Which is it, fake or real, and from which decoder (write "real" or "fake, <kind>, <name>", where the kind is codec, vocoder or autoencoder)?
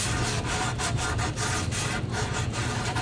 real